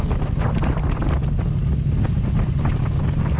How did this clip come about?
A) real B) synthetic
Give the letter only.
A